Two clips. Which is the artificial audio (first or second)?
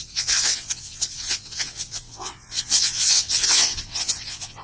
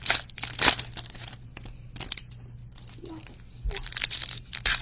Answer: first